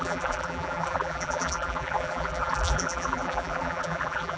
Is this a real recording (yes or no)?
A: no